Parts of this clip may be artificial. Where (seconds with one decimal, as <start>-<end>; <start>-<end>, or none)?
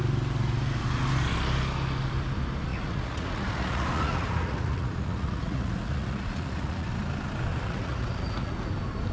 2.7-6.9; 7.5-8.7